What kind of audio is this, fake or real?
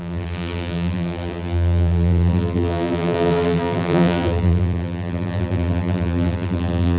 fake